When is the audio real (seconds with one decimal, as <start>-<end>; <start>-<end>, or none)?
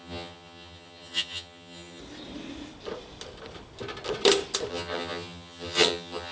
2.0-4.7